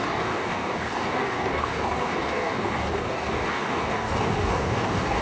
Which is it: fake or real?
fake